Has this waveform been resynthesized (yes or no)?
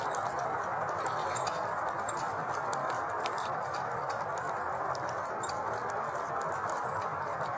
yes